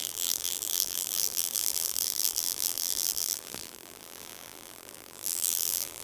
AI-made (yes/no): yes